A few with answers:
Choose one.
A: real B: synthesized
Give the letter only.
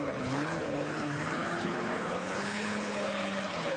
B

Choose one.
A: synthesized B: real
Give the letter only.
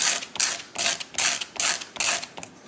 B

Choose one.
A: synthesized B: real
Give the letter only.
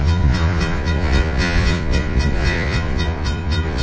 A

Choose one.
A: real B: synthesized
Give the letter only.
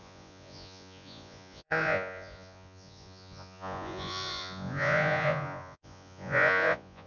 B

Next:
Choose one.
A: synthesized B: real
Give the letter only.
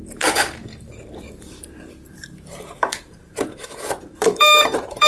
A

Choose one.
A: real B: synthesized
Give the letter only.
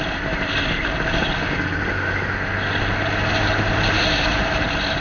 A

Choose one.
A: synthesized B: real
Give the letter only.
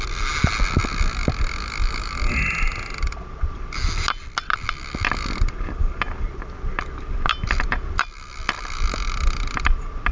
B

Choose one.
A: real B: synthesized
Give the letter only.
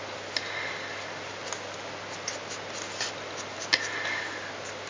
A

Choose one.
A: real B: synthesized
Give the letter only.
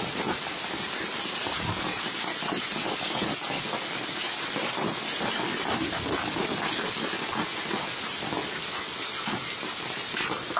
A